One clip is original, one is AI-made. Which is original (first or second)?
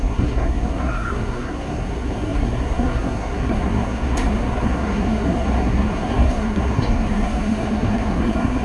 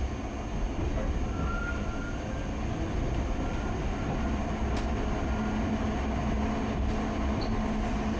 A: second